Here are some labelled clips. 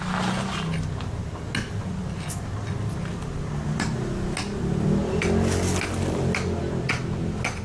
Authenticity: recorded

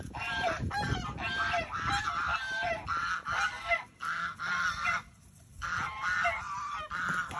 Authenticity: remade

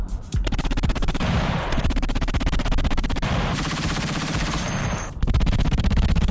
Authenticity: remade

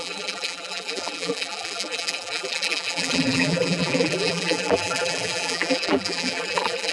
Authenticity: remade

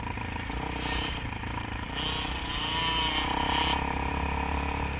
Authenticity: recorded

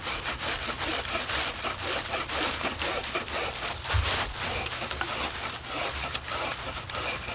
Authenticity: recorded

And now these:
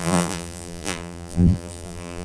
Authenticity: remade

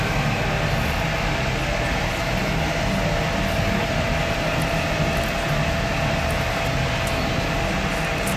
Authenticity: recorded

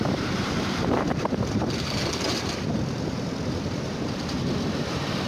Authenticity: remade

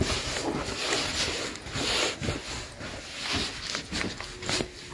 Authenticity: recorded